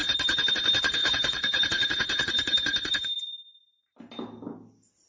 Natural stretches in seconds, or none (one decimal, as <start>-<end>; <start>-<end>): 0.0-1.0; 4.1-5.1